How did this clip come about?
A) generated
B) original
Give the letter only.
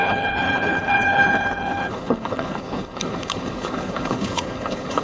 A